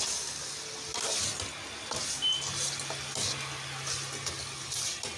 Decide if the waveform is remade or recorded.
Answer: recorded